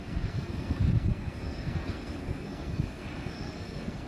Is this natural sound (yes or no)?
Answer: no